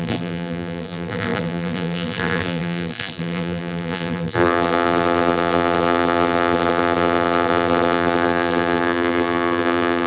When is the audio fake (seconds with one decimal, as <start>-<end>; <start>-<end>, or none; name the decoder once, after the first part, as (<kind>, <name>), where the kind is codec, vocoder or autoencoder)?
0.0-10.1 (vocoder, BigVGAN v2)